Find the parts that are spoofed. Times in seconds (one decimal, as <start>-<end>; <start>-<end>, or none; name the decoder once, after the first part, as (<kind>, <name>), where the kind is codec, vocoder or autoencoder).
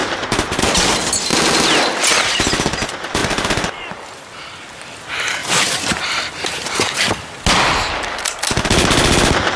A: 3.2-4.0 (vocoder, BigVGAN v2); 5.4-6.9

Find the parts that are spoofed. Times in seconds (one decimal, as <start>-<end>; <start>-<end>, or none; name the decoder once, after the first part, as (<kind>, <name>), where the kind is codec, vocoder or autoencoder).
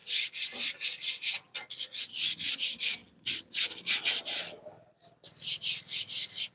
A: none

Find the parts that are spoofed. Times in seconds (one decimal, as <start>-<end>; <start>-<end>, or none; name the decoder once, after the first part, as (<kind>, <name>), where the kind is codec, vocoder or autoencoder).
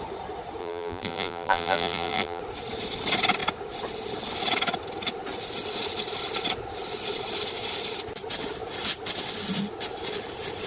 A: 0.6-2.4 (vocoder, BigVGAN v2)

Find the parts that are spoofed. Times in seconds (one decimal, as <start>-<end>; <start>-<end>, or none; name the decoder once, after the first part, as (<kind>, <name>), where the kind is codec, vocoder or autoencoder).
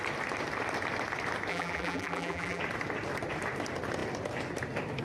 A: 1.5-2.6 (vocoder, BigVGAN v2)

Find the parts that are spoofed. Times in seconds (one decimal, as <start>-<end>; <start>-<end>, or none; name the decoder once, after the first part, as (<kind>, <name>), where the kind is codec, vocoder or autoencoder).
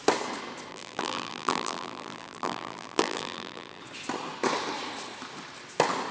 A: 0.7-3.8 (vocoder, BigVGAN v2)